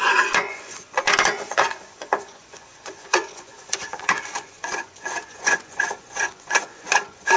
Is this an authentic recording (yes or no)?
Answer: no